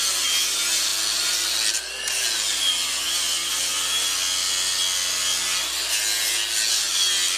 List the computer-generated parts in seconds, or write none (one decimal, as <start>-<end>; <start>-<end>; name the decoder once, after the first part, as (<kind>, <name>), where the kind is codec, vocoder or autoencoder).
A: none